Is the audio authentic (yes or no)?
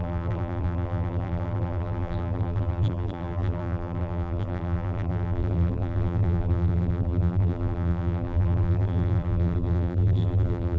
no